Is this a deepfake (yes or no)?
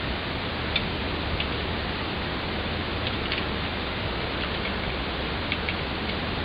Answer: no